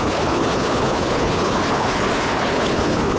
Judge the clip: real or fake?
fake